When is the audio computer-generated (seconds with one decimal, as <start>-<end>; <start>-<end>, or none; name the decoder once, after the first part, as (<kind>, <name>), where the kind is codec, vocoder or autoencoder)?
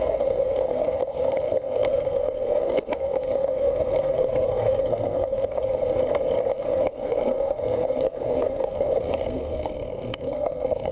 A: 0.0-6.0 (codec, SNAC); 6.5-10.9